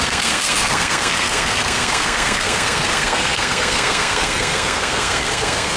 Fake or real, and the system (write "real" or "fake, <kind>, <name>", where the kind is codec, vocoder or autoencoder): fake, codec, SNAC